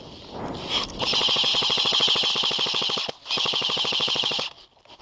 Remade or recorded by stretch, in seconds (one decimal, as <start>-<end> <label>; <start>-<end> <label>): 0.0-1.5 recorded; 1.5-2.3 remade; 2.3-3.6 recorded; 3.6-4.5 remade; 4.5-5.0 recorded